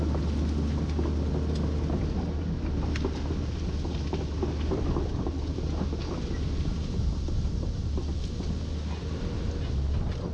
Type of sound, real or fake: real